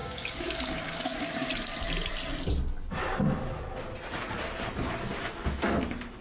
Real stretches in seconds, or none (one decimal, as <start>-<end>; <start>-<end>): 1.5-6.2